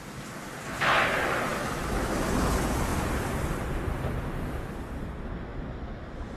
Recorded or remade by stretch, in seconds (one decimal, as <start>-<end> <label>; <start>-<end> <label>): 0.0-6.4 recorded